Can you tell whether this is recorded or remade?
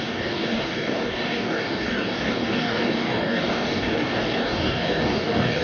remade